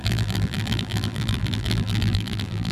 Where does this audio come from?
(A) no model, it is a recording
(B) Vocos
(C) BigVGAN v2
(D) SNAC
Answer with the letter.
C